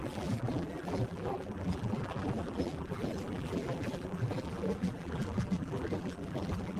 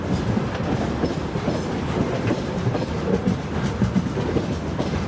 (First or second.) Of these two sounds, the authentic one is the second